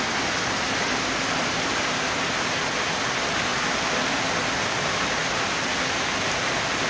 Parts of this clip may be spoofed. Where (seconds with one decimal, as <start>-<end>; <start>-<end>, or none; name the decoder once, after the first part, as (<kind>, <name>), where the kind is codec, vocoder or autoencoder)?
none